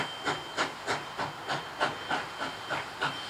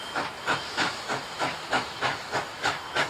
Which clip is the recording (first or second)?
first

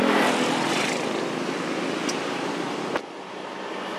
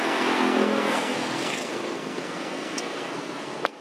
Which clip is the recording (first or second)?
first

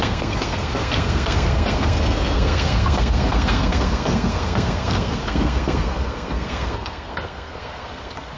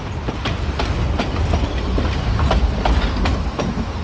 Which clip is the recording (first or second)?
second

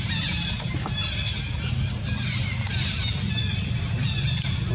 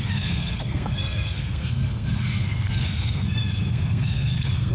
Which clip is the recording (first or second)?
first